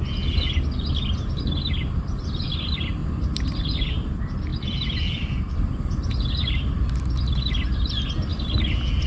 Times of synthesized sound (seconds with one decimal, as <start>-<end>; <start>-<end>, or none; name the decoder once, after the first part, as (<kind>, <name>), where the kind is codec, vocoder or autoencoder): none